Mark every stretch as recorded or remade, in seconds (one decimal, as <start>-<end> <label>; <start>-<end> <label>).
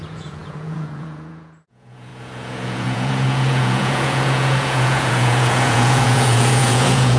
0.0-7.2 remade